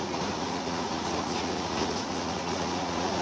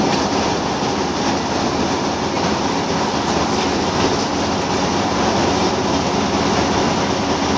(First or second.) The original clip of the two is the second